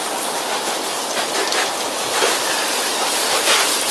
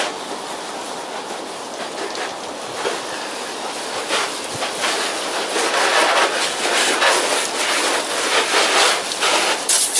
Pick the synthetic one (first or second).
first